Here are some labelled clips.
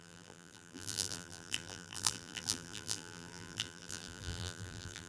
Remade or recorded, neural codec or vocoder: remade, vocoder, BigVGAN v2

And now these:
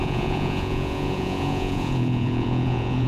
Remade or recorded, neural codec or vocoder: remade, vocoder, Vocos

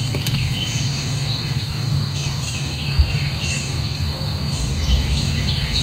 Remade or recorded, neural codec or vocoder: remade, codec, DAC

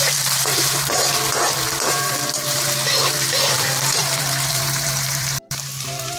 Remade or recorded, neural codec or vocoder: remade, vocoder, BigVGAN v2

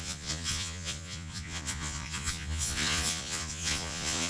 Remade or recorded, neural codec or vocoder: remade, vocoder, Vocos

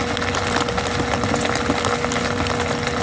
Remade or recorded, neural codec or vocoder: recorded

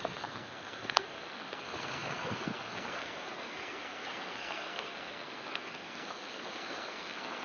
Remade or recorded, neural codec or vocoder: remade, codec, SNAC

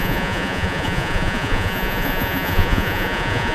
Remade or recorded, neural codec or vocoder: remade, vocoder, Vocos